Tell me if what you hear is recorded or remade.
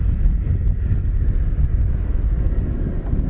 recorded